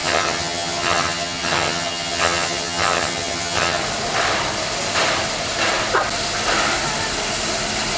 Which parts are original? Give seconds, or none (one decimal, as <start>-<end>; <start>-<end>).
3.8-8.0